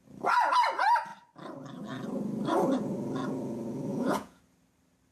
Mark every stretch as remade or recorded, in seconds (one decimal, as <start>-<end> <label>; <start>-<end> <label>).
0.0-3.9 recorded; 3.9-4.4 remade; 4.4-5.1 recorded